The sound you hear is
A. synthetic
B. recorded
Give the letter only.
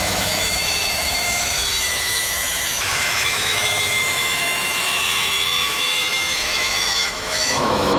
A